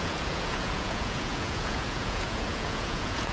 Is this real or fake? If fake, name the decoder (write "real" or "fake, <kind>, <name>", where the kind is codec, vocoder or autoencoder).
fake, vocoder, Vocos